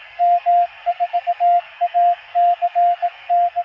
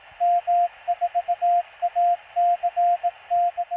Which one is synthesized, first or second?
first